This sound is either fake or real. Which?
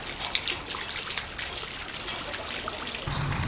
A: real